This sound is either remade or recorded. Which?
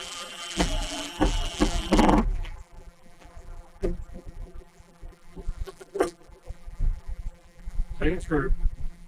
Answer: remade